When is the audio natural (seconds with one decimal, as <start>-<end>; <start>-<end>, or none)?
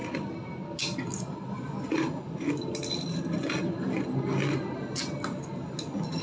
0.0-6.2